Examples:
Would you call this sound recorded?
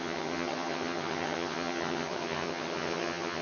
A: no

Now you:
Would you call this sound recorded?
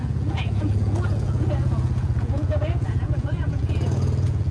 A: no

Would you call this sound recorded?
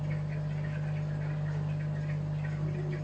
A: yes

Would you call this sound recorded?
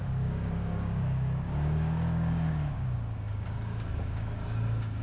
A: no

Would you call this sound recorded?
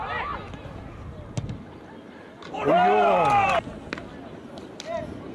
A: yes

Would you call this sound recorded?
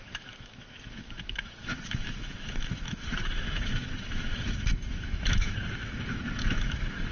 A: no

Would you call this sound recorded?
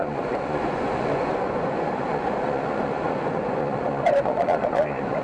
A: no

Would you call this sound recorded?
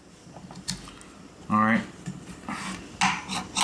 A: yes